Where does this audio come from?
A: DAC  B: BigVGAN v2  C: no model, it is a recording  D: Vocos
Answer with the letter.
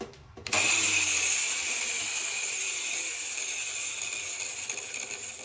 C